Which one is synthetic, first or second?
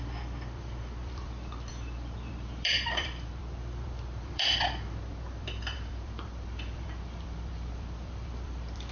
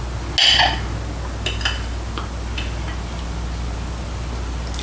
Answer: first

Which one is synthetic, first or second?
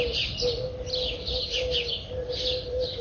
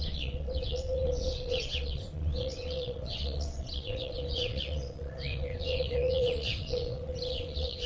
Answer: second